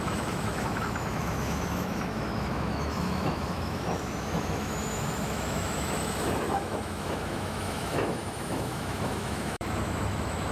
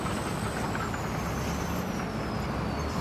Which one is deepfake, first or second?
first